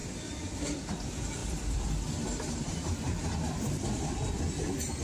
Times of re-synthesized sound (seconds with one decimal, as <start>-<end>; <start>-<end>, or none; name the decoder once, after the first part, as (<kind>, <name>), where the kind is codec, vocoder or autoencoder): 0.0-0.9 (vocoder, BigVGAN v2); 1.4-4.4